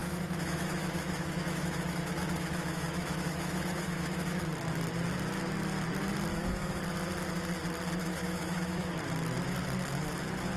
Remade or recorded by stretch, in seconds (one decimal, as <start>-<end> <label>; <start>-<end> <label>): 0.0-4.4 remade; 4.4-6.3 recorded; 6.3-6.8 remade; 6.8-8.0 recorded; 8.0-8.9 remade; 8.9-10.6 recorded